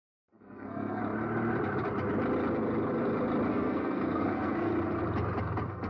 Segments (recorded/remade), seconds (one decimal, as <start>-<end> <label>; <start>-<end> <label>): 0.0-1.0 remade; 1.0-3.5 recorded; 3.5-4.7 remade; 4.7-5.4 recorded; 5.4-5.9 remade